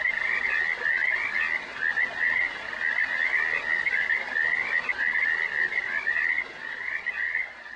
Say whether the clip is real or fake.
real